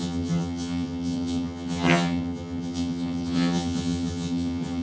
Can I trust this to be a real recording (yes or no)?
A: no